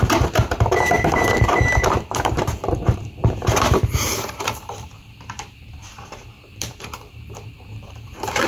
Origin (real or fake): fake